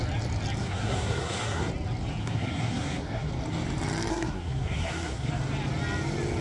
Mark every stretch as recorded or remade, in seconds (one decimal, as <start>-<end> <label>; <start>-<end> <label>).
0.0-0.6 recorded; 0.6-1.7 remade; 1.7-2.2 recorded; 2.2-3.3 remade; 3.3-4.1 recorded; 4.1-5.3 remade; 5.3-6.4 recorded